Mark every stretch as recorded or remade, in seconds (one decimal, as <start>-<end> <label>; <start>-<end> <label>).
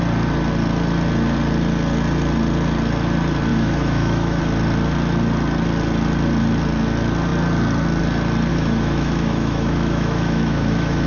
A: 0.0-3.5 recorded; 3.5-4.4 remade; 4.4-8.5 recorded; 8.5-11.1 remade